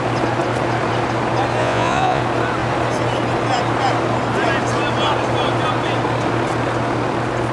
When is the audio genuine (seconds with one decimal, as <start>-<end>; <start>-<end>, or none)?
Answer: 0.0-1.6; 2.2-7.5